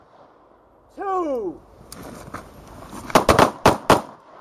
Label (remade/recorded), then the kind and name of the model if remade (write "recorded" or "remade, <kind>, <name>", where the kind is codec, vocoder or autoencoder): recorded